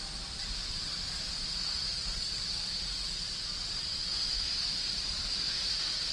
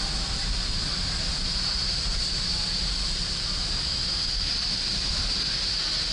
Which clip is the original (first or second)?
second